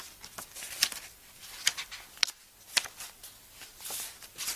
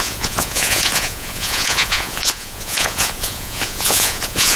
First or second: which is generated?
second